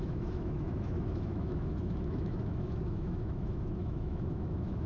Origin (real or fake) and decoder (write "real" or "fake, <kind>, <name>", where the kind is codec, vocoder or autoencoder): fake, autoencoder, DAC-VAE